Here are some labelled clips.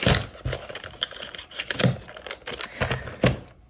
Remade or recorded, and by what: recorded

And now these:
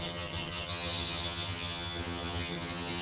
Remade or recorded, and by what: remade, vocoder, HiFi-GAN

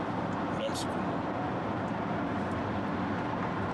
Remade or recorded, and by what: recorded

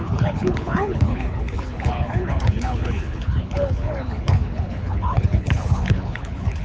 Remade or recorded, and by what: remade, codec, HILCodec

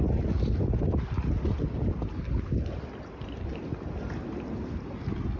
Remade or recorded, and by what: recorded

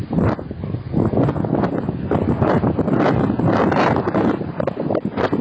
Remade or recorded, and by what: recorded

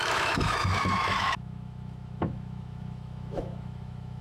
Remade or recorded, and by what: remade, autoencoder, DAC-VAE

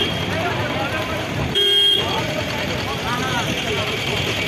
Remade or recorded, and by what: remade, vocoder, BigVGAN v2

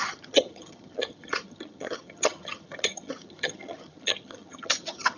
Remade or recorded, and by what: remade, vocoder, HiFi-GAN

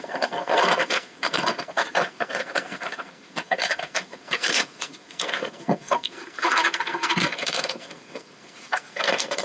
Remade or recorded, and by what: remade, codec, SNAC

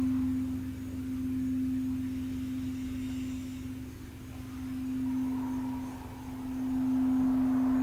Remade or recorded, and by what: recorded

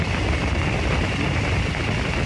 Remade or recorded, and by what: recorded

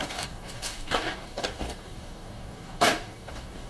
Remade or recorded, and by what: remade, codec, DAC